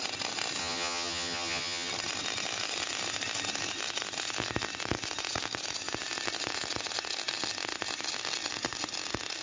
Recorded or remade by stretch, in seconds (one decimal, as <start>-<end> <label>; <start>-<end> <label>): 0.0-0.6 recorded; 0.6-1.9 remade; 1.9-9.4 recorded